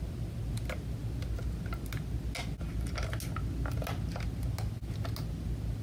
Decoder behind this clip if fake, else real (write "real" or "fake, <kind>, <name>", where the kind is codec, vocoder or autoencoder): real